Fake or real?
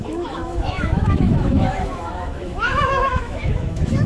fake